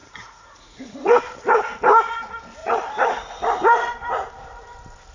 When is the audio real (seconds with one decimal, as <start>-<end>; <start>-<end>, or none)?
1.2-2.6; 3.3-5.1